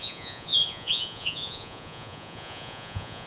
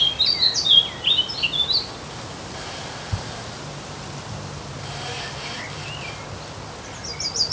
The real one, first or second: second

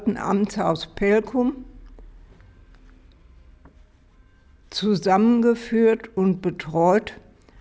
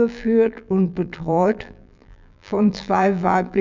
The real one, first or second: first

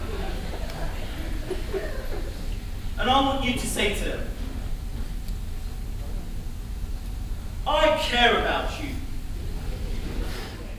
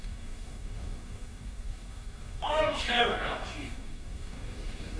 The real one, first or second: first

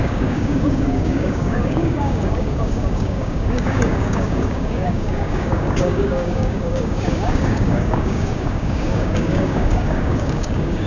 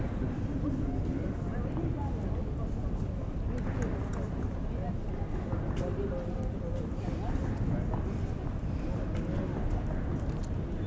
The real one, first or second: second